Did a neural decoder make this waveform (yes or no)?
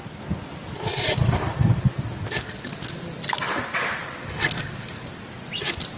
no